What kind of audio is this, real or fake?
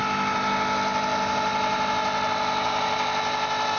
real